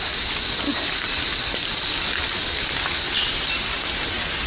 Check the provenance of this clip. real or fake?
real